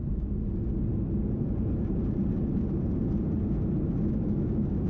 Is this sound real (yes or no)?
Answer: yes